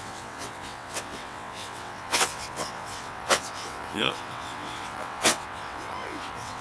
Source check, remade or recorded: remade